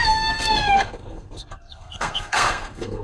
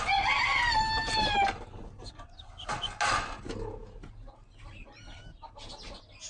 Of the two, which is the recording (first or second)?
second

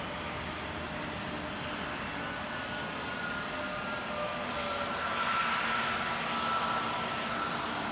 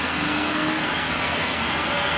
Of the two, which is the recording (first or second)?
first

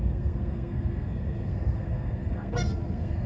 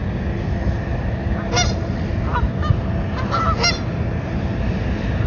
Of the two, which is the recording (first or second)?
second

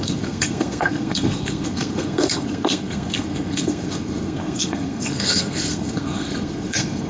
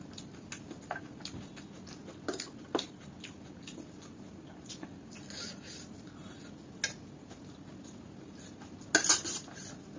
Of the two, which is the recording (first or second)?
second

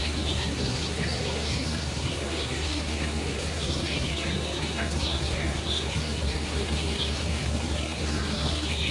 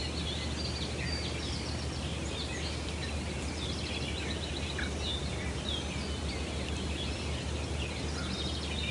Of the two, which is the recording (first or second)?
second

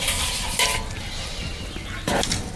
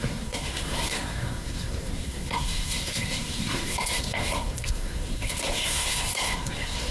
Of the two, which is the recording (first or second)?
first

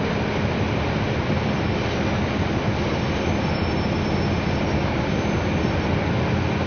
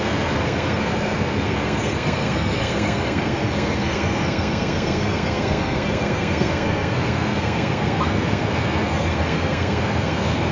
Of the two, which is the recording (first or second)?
first